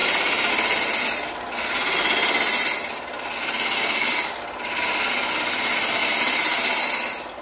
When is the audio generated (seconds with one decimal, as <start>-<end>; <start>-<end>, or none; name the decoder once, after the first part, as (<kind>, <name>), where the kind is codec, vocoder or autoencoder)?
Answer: 0.0-0.5 (vocoder, BigVGAN v2); 6.0-6.9